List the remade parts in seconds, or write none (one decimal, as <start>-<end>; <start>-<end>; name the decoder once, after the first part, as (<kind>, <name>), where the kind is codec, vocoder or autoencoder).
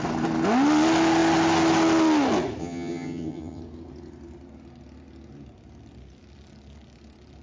2.6-3.6 (vocoder, HiFi-GAN)